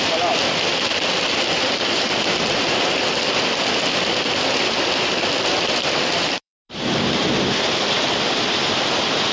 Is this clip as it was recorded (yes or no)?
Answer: no